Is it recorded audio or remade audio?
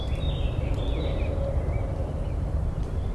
remade